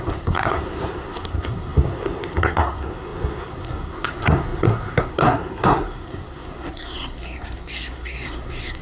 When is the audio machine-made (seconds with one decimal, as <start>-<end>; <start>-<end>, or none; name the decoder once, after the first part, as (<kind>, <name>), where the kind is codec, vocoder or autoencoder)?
0.0-8.8 (codec, SNAC)